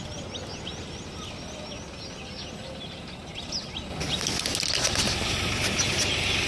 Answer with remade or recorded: recorded